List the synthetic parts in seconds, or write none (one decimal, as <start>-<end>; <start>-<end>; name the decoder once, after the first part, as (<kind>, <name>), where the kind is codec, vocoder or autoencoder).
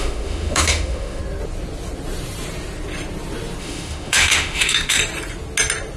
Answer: 0.0-1.2 (autoencoder, DAC-VAE); 3.6-5.0